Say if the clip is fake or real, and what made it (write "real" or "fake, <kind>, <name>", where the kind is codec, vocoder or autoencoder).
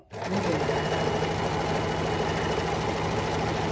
real